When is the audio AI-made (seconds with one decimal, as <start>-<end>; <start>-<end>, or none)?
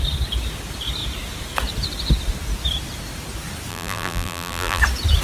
3.7-4.8